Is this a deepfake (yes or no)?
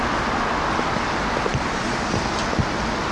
no